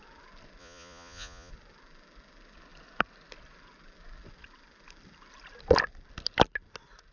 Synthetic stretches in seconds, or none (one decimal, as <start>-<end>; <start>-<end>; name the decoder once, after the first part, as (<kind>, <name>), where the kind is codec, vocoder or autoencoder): 0.6-1.5 (vocoder, Vocos)